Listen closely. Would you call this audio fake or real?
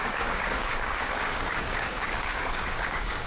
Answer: fake